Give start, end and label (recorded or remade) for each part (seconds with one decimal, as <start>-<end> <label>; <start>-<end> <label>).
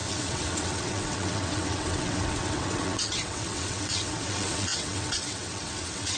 0.0-6.2 remade